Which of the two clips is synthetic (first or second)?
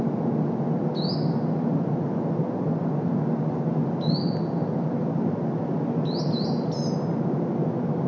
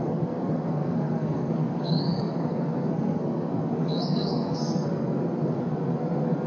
second